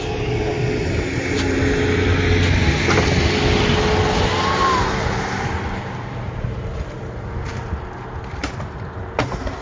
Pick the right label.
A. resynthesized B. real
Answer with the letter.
B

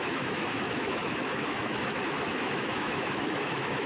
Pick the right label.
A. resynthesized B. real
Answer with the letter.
A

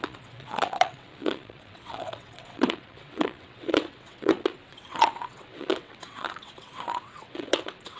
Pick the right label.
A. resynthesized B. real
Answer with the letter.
A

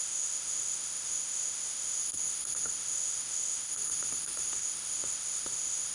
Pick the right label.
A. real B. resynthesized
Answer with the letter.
B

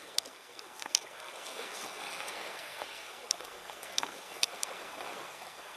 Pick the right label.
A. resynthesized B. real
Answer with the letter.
A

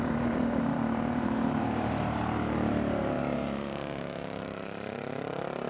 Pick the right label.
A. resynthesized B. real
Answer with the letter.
A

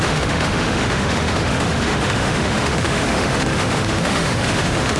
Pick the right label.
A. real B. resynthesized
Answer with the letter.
B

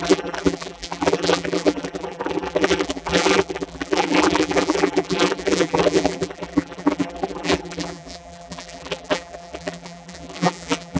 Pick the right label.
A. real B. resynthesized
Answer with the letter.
B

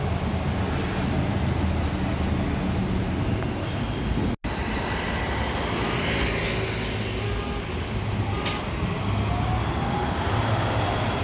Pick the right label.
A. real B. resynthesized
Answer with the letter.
A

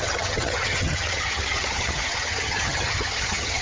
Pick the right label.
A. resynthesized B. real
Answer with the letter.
A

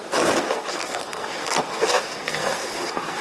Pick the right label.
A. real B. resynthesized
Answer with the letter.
B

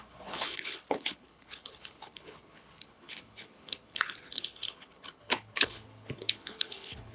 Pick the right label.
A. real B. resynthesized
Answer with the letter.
B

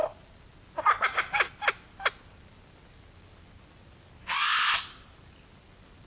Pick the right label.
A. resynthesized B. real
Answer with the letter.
B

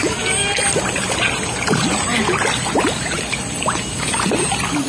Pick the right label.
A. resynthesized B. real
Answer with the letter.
B